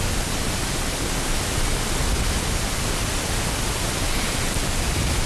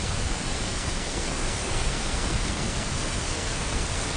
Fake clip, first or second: second